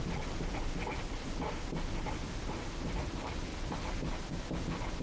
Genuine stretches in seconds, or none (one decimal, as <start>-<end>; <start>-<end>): 0.0-5.0